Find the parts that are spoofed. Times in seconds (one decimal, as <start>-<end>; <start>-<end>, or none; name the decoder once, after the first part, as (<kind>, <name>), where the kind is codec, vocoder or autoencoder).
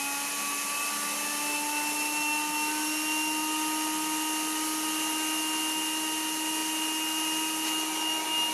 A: none